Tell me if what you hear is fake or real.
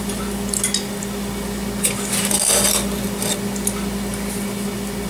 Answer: real